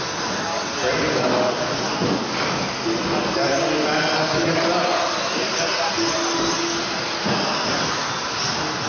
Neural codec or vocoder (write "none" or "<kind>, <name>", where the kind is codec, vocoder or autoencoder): none